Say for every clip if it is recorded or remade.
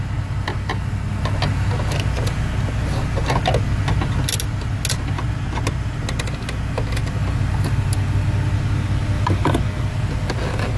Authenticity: recorded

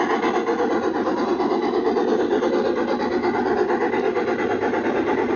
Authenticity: recorded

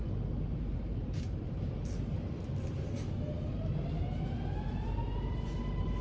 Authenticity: recorded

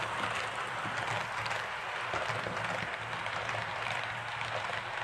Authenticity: recorded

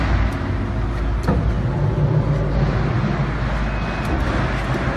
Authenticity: recorded